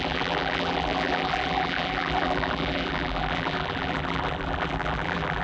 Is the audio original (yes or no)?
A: no